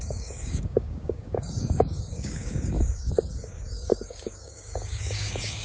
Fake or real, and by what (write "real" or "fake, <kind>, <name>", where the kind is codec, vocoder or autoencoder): fake, codec, DAC